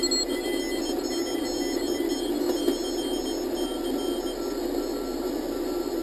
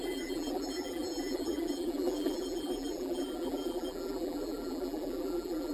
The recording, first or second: first